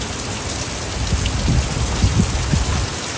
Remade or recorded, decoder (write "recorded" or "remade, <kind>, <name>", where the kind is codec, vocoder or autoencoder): recorded